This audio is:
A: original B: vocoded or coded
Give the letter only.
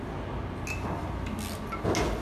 A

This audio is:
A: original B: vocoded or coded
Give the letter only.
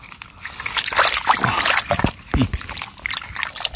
A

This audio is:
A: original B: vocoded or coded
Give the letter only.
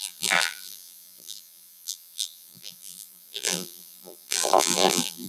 B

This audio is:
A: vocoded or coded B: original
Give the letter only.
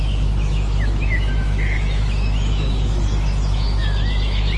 A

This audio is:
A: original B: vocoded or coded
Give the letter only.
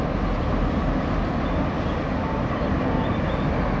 A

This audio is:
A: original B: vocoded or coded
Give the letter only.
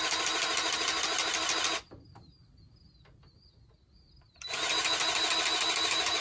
A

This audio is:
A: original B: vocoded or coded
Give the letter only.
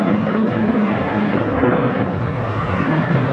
B